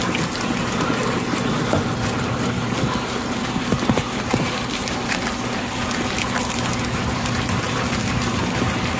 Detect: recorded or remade recorded